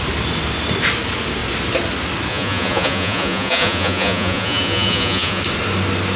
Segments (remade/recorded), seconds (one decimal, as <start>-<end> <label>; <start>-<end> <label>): 0.0-2.3 recorded; 2.3-5.4 remade; 5.4-6.2 recorded